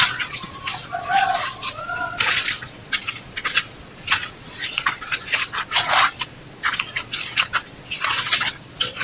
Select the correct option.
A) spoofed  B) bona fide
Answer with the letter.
A